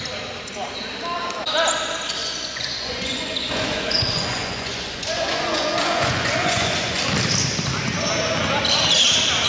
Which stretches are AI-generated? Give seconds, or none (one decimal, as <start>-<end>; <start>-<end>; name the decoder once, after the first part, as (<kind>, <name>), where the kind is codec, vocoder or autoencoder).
2.2-7.0 (vocoder, Vocos)